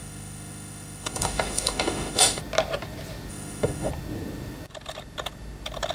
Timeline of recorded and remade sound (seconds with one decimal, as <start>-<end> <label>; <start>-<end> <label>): 0.0-2.4 remade; 2.4-3.3 recorded; 3.3-3.9 remade; 3.9-5.9 recorded